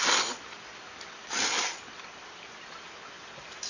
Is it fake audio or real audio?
real